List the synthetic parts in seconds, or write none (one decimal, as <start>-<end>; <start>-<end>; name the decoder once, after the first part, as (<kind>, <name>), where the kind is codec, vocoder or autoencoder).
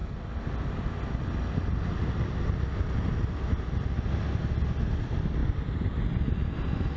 none